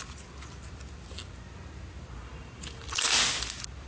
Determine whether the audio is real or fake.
real